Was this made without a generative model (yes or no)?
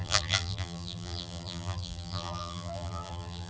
no